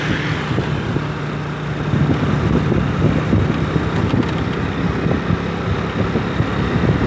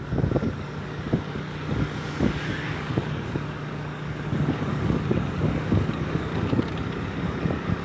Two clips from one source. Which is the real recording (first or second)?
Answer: first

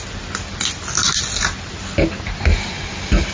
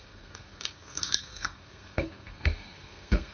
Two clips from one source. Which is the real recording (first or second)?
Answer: first